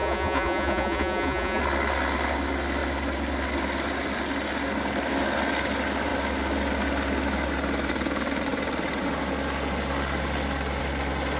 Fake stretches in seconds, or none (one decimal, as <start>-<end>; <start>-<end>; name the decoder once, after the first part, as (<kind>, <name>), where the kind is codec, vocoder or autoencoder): 0.0-1.6 (vocoder, Vocos)